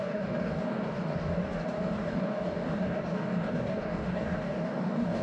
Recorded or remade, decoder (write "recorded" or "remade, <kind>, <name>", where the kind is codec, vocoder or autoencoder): remade, codec, DAC